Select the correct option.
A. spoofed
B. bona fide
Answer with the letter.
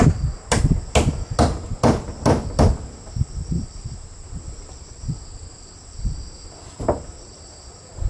B